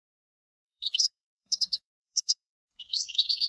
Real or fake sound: fake